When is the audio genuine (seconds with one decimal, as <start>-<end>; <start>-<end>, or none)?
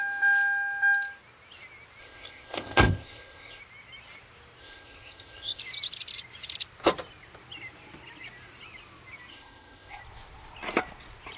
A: 0.0-2.0; 3.6-4.6; 5.6-9.3; 10.0-11.4